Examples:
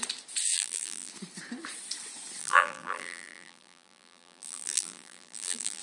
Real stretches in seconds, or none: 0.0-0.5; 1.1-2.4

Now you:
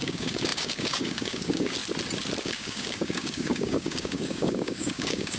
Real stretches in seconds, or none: 1.8-2.4

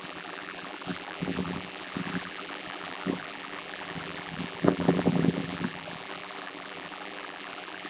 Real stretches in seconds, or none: none